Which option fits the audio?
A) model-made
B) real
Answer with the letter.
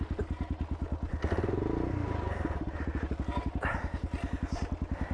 B